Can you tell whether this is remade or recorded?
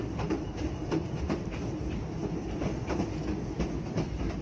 recorded